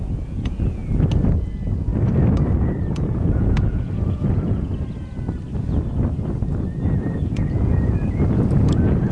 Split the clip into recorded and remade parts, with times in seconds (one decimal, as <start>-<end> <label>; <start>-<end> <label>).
0.0-0.8 remade; 0.8-1.3 recorded; 1.3-1.9 remade; 1.9-2.9 recorded; 2.9-4.7 remade; 4.7-7.2 recorded; 7.2-9.1 remade